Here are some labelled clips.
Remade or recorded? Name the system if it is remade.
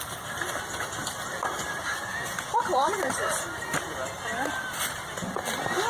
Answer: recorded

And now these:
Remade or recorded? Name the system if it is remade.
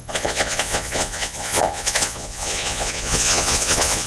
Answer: remade, vocoder, Vocos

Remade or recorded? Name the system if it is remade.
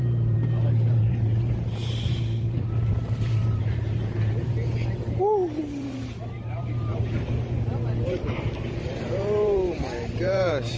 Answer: remade, vocoder, BigVGAN v2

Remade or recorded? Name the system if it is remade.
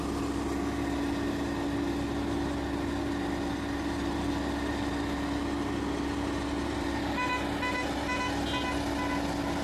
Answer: recorded